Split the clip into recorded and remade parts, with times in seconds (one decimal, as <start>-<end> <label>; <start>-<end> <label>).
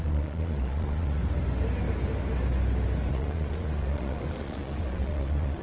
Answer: 0.0-1.2 remade; 1.2-3.1 recorded; 3.1-5.6 remade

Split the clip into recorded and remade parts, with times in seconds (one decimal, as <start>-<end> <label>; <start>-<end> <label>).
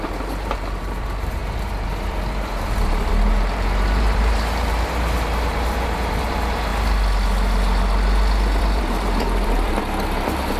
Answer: 0.0-6.7 remade; 6.7-8.6 recorded; 8.6-10.6 remade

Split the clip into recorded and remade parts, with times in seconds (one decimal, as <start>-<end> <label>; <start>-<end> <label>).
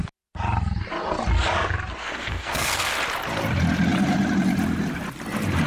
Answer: 0.0-2.0 recorded; 2.0-2.9 remade; 2.9-5.7 recorded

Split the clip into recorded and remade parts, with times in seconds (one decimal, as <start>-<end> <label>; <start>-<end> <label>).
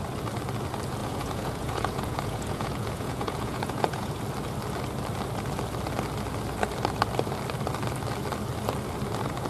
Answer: 0.0-1.0 recorded; 1.0-4.2 remade; 4.2-9.5 recorded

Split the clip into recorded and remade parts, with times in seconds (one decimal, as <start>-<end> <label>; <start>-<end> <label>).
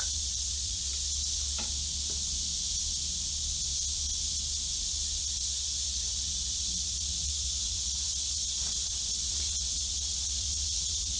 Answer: 0.0-0.9 remade; 0.9-5.2 recorded; 5.2-11.2 remade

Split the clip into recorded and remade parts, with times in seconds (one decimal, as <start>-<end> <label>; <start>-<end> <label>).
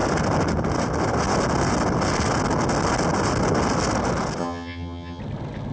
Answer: 0.0-4.4 recorded; 4.4-5.2 remade; 5.2-5.7 recorded